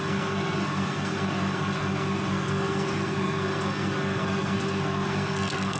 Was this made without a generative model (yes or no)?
no